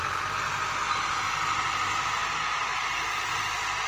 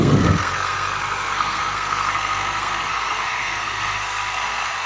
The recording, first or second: first